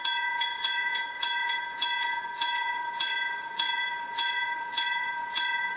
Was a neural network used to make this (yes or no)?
yes